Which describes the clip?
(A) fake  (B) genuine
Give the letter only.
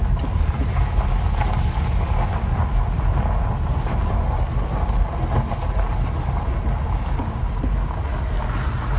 B